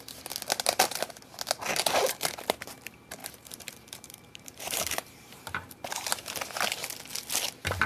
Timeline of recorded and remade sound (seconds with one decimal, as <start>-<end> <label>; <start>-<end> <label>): 0.0-3.2 recorded; 3.2-5.9 remade; 5.9-7.9 recorded